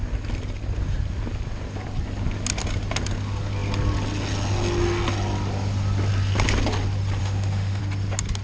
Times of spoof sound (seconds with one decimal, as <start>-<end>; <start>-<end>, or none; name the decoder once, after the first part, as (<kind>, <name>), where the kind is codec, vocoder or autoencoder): 7.2-7.8 (autoencoder, DAC-VAE)